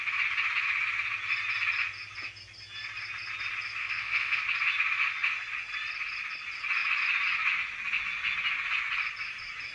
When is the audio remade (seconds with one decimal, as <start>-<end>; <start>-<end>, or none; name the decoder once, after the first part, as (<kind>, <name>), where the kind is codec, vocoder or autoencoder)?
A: 3.8-4.4 (codec, SNAC)